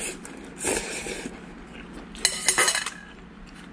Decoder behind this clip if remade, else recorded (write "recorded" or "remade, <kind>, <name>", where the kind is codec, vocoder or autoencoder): recorded